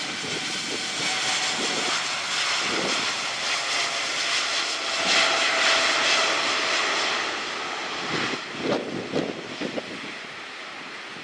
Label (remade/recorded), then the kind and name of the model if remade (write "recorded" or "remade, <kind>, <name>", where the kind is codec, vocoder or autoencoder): recorded